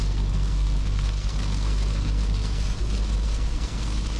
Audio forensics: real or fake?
fake